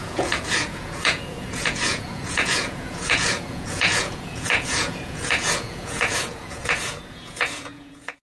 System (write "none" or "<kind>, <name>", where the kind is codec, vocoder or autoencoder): vocoder, Vocos